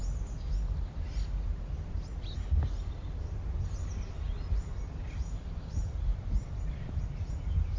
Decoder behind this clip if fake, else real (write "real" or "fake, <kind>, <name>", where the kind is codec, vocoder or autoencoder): real